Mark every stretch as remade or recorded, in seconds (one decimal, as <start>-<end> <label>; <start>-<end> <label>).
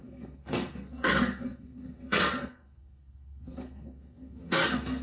0.0-5.0 remade